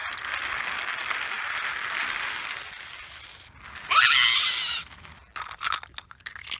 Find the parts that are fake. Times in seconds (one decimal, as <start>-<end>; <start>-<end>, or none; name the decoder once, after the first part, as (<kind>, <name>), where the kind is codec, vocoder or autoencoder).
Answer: 0.0-0.5 (vocoder, BigVGAN v2); 1.0-1.7